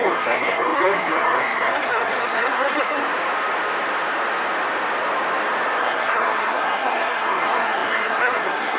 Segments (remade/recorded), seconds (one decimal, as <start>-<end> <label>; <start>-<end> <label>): 0.0-3.0 remade; 3.0-5.8 recorded; 5.8-8.8 remade